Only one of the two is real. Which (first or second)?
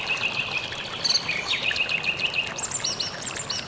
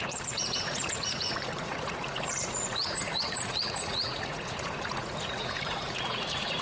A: first